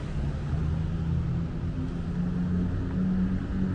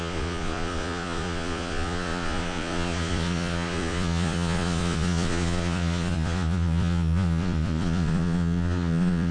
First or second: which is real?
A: first